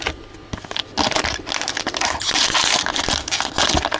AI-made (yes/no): no